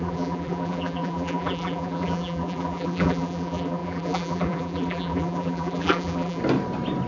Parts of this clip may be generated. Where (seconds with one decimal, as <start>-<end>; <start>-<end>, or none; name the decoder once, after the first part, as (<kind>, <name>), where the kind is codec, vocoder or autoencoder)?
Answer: 0.0-6.4 (vocoder, BigVGAN v2)